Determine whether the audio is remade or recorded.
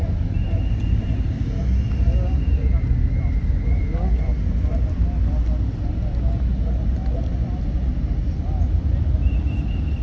recorded